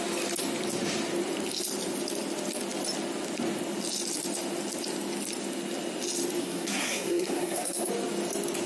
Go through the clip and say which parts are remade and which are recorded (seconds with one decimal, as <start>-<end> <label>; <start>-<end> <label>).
0.0-6.4 recorded; 6.4-7.9 remade; 7.9-8.7 recorded